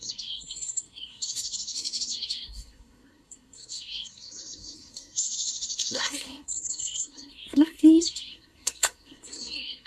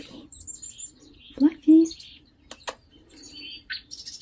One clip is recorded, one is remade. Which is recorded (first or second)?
second